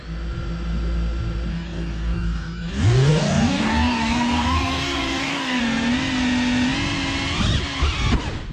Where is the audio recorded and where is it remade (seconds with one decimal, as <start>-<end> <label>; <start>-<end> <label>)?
0.0-1.5 recorded; 1.5-5.6 remade; 5.6-8.5 recorded